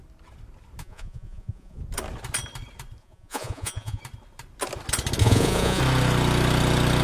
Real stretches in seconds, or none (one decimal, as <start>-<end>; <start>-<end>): 0.0-0.8; 1.8-3.0; 4.0-5.2; 5.8-7.0